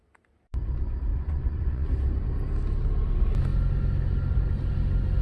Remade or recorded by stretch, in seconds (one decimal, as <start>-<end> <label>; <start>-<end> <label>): 0.0-1.1 recorded; 1.1-1.9 remade; 1.9-5.2 recorded